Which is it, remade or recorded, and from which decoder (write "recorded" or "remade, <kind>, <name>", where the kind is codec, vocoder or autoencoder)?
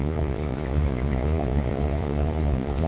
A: remade, vocoder, Vocos